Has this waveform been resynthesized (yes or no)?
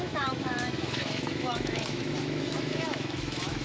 yes